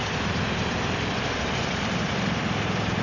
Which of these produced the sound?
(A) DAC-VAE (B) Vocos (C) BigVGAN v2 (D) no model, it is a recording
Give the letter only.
C